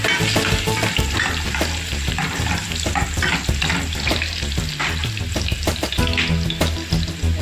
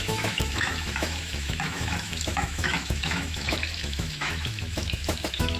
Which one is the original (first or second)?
first